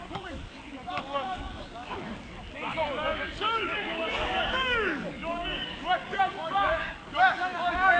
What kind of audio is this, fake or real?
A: fake